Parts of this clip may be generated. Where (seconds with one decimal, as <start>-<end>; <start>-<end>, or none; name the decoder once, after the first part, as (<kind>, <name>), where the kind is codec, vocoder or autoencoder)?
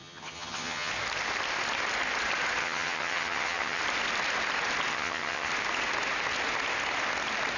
0.0-0.9 (vocoder, HiFi-GAN); 2.6-3.8; 4.9-5.5